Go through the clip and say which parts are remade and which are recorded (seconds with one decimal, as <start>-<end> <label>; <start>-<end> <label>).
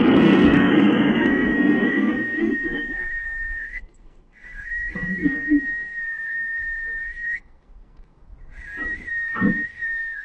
0.0-8.3 remade; 8.3-9.1 recorded; 9.1-10.2 remade